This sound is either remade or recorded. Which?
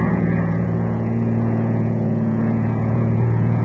remade